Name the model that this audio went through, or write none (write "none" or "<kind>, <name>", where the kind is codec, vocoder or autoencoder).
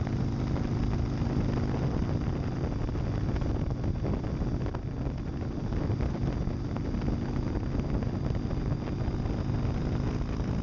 none